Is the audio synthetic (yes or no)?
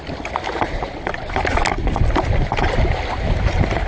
no